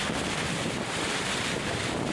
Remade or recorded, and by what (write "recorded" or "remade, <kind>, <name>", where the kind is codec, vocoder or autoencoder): recorded